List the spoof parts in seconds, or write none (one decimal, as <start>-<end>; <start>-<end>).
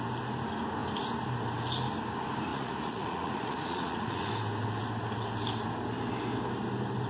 2.5-4.3